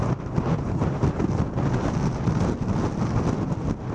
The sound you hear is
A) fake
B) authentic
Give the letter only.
B